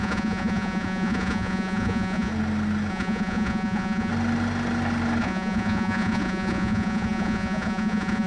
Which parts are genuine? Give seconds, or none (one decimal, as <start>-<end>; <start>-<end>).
2.3-2.9; 4.1-5.2